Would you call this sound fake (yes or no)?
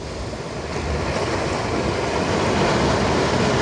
no